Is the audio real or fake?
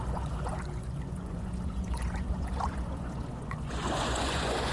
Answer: fake